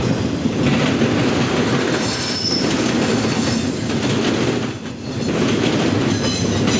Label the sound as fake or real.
real